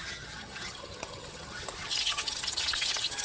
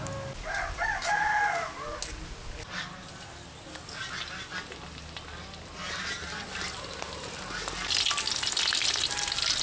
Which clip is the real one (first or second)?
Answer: second